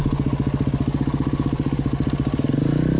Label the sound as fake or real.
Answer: real